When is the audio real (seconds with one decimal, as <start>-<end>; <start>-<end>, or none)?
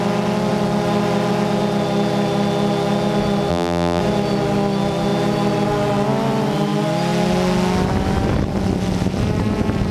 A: 0.0-3.5; 4.0-9.9